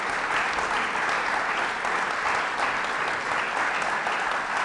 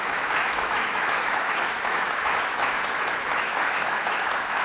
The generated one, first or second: second